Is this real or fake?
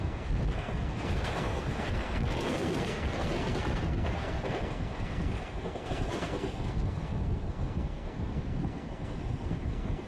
fake